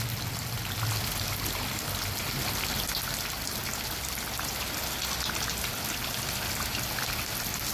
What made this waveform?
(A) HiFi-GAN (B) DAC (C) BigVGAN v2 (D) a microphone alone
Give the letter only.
D